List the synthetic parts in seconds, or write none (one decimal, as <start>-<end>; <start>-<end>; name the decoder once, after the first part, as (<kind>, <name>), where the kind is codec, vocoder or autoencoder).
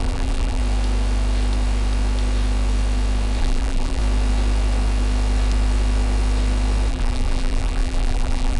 0.0-0.6 (vocoder, BigVGAN v2); 3.4-4.0; 6.9-8.6